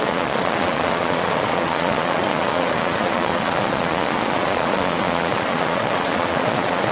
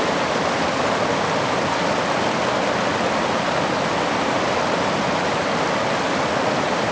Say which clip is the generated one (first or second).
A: first